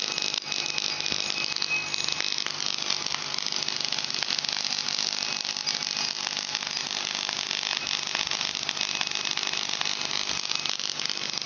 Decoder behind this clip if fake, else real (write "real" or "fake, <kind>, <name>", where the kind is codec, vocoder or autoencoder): real